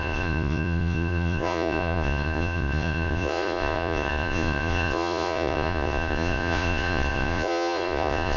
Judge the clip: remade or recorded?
remade